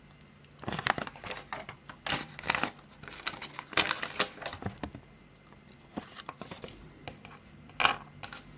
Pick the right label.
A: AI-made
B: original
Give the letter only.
B